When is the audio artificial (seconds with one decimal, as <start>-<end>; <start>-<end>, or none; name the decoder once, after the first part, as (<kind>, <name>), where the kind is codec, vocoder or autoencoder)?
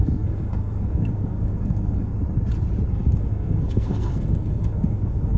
0.0-2.1 (codec, SNAC); 2.9-5.4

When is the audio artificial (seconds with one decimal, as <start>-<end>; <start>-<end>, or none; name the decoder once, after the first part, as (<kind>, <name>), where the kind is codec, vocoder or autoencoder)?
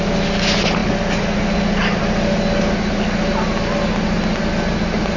none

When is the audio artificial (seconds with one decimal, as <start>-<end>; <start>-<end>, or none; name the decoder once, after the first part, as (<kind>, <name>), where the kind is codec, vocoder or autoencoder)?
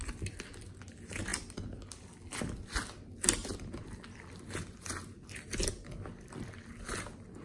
none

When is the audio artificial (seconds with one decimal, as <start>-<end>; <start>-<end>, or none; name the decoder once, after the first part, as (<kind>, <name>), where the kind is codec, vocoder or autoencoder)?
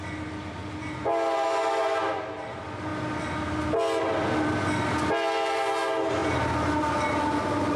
none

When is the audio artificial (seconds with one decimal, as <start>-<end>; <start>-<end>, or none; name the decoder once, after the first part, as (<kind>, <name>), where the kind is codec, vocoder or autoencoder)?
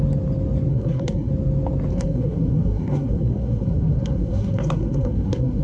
0.7-1.3 (codec, SNAC); 1.9-5.6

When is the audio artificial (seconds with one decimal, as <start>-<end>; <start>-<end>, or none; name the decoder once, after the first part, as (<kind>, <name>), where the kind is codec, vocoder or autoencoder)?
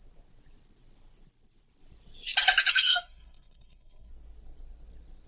2.7-4.1 (codec, SNAC)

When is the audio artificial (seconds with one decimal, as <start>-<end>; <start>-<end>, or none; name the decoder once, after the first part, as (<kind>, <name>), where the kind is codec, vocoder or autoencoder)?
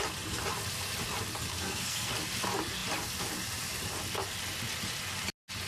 1.5-2.1 (codec, SNAC)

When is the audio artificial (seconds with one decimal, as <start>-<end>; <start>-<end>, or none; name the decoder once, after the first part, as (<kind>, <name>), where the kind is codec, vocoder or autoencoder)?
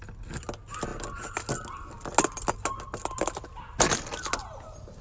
none